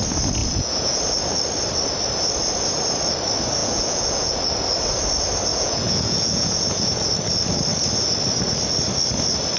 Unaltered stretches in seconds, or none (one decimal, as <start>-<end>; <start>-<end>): 0.0-0.4; 1.0-3.6; 4.4-5.5; 7.1-9.6